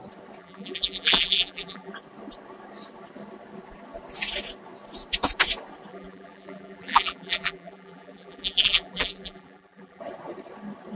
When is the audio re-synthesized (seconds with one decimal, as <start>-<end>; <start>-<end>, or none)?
0.4-1.9; 5.9-10.0